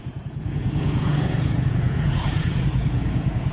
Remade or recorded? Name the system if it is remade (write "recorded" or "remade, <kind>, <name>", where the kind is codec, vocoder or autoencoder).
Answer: remade, vocoder, Vocos